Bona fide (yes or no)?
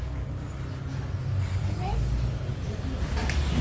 yes